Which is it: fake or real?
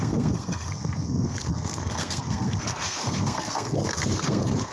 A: fake